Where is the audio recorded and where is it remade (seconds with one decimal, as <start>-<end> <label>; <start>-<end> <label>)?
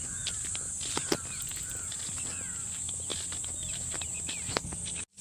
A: 0.0-5.2 recorded